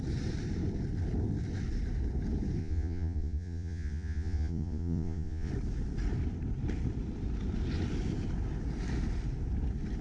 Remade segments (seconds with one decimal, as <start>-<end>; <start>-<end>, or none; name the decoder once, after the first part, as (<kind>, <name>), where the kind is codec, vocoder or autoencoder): 2.6-5.5 (vocoder, Vocos)